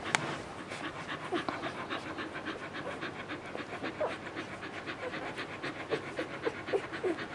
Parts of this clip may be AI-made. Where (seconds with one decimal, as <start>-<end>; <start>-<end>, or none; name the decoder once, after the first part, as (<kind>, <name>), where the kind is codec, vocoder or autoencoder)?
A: none